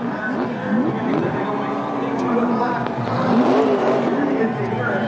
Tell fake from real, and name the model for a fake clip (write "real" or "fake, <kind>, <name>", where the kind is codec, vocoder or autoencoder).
real